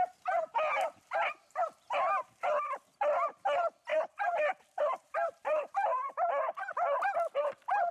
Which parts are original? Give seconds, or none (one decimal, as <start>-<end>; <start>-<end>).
0.0-3.9; 6.1-7.9